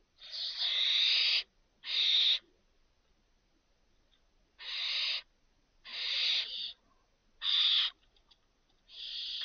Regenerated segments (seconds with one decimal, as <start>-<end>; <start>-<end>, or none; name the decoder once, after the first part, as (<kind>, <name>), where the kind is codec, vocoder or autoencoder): none